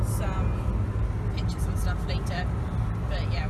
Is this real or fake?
real